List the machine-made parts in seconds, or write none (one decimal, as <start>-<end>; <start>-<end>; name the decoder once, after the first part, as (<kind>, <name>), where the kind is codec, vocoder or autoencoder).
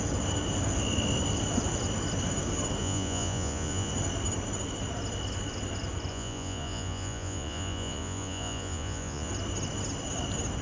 2.8-3.9 (vocoder, Vocos); 6.1-9.3